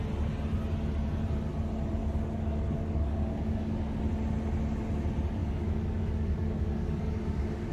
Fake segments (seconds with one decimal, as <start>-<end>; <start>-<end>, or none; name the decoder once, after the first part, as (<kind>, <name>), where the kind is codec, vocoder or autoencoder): 2.0-4.0 (codec, DAC); 5.4-7.7